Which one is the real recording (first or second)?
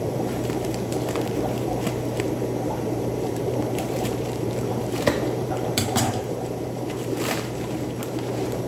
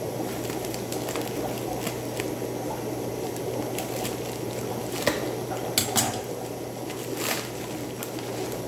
second